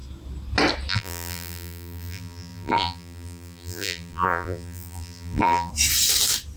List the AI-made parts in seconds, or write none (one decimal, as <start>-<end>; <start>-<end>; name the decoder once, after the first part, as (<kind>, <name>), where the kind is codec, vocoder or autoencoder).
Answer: 0.9-5.7 (vocoder, BigVGAN v2)